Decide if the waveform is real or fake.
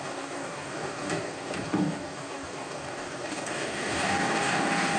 fake